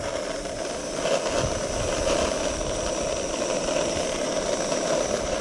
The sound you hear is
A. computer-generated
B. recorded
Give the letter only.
B